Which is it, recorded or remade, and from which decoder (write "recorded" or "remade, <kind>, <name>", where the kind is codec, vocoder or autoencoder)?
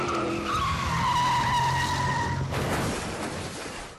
recorded